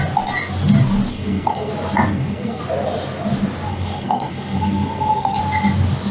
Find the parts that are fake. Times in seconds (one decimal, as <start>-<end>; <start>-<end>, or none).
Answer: 1.1-1.7; 2.1-2.6; 3.7-5.4